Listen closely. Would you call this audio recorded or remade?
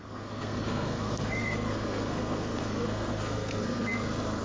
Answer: remade